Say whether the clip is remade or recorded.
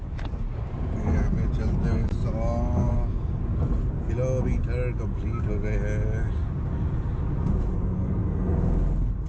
recorded